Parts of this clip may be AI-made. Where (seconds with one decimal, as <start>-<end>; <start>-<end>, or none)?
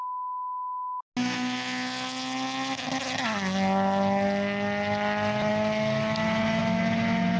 none